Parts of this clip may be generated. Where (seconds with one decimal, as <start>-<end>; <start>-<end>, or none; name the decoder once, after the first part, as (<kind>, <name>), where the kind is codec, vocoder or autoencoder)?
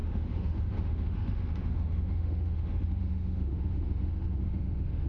0.0-5.1 (autoencoder, DAC-VAE)